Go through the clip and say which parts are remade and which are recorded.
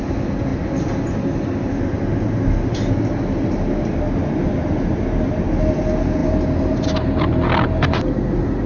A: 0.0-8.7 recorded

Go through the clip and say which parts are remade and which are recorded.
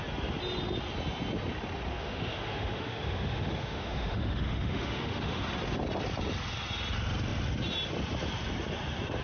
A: 0.0-1.9 recorded; 1.9-5.4 remade; 5.4-9.2 recorded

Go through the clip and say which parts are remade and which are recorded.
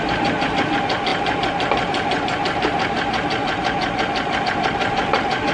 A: 0.0-5.5 recorded